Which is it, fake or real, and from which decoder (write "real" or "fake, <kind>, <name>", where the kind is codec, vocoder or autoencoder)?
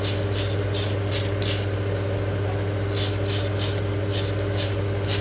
real